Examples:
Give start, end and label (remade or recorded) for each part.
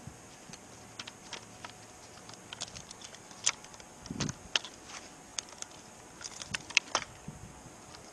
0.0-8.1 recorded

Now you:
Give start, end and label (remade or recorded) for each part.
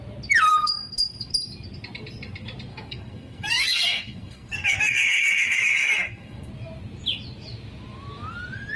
0.0-0.5 recorded; 0.5-1.3 remade; 1.3-2.7 recorded; 2.7-6.5 remade; 6.5-8.8 recorded